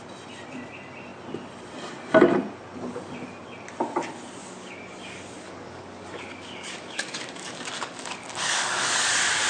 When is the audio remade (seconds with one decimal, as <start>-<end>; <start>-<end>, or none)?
4.4-9.1

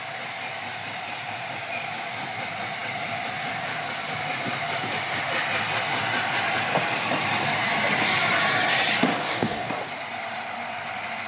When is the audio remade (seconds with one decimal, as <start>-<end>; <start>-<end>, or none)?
9.1-9.7